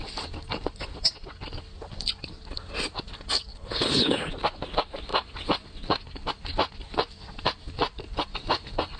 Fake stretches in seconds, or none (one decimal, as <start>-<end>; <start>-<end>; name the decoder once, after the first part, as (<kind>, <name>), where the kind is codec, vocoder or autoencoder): 3.5-4.3 (codec, HILCodec)